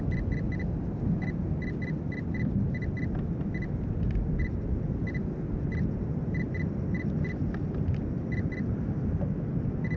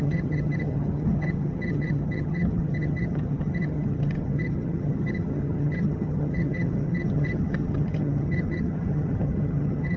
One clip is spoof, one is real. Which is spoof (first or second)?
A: second